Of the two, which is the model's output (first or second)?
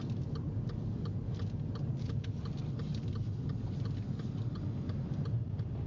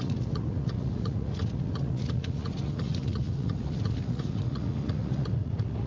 second